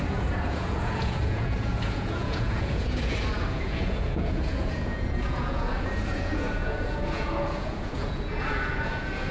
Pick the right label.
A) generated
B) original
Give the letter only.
A